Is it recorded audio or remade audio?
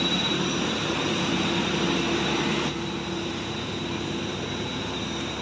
recorded